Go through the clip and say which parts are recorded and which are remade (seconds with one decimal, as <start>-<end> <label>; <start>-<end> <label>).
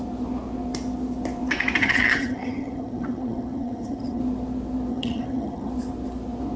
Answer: 0.0-1.8 recorded; 1.8-4.2 remade; 4.2-4.9 recorded; 4.9-5.7 remade; 5.7-6.6 recorded